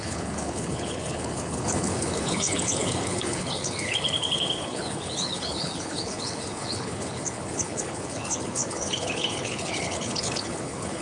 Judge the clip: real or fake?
fake